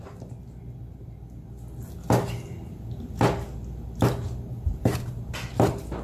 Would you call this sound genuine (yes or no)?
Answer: yes